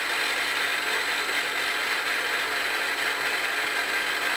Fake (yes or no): no